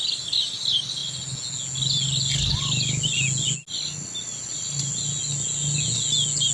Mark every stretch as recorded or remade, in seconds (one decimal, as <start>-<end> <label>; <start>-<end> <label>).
0.0-6.5 recorded